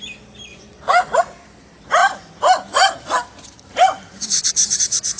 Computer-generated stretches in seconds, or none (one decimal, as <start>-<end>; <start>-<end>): 0.5-1.2